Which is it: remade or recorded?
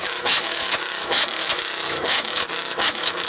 remade